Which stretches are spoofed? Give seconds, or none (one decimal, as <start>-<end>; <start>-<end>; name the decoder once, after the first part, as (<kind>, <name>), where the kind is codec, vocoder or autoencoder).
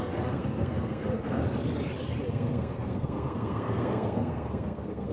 0.0-1.4 (codec, SNAC); 2.3-5.1